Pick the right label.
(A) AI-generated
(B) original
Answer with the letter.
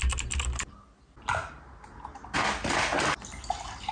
B